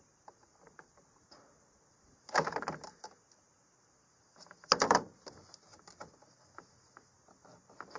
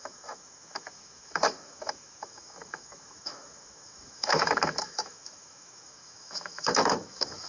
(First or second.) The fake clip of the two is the second